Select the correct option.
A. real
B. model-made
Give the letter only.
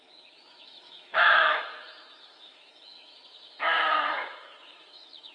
B